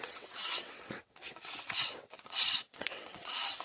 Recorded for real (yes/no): no